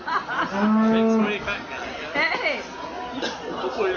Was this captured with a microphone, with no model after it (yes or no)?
yes